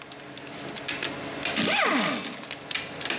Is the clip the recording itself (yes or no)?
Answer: yes